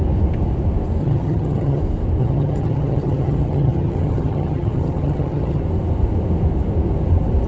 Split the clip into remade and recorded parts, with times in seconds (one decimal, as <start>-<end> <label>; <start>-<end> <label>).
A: 0.0-1.0 recorded; 1.0-1.8 remade; 1.8-2.2 recorded; 2.2-5.6 remade; 5.6-7.5 recorded